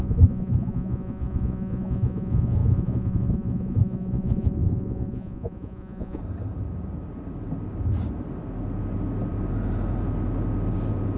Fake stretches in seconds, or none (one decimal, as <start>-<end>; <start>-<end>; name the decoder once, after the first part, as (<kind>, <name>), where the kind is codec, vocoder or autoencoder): 0.0-6.2 (vocoder, Vocos)